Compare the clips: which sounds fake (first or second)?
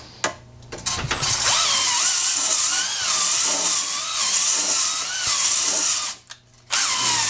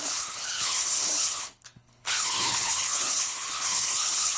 second